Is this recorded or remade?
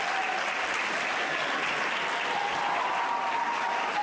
recorded